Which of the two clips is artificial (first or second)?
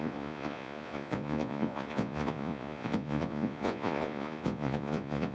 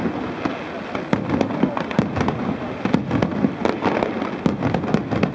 first